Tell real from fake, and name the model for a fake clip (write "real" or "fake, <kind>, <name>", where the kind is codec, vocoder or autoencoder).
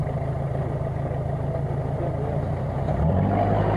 fake, vocoder, BigVGAN v2